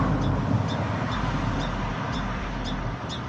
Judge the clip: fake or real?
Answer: real